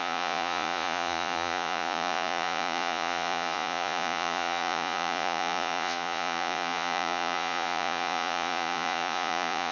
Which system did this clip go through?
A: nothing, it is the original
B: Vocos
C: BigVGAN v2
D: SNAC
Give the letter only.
B